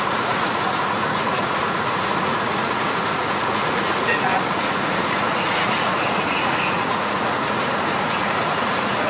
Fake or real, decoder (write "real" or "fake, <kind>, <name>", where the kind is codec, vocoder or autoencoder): fake, vocoder, Vocos